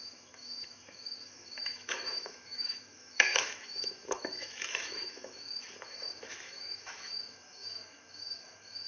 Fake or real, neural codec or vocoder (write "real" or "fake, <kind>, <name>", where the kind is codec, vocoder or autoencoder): fake, autoencoder, DAC-VAE